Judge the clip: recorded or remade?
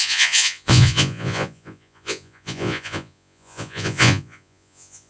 remade